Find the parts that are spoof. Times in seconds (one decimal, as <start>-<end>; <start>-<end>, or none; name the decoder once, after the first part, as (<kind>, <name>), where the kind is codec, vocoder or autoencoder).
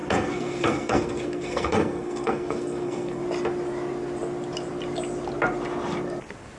0.0-3.2 (codec, SNAC)